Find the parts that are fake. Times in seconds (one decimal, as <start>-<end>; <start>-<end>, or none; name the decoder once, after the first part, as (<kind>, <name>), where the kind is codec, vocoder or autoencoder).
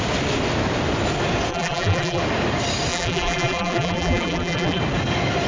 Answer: 1.5-2.2 (vocoder, BigVGAN v2); 2.9-4.8